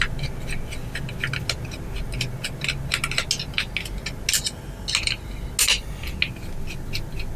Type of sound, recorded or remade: recorded